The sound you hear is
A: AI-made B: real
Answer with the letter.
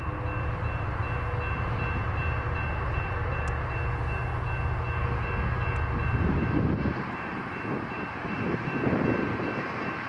B